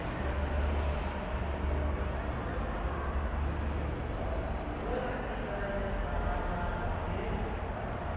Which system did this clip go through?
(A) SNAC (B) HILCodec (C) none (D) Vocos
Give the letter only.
C